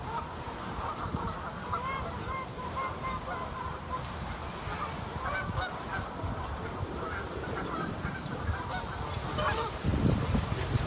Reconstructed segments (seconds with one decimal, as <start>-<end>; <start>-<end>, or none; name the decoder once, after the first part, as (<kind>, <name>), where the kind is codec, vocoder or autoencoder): 0.0-2.8 (vocoder, BigVGAN v2); 3.7-4.4; 6.4-10.9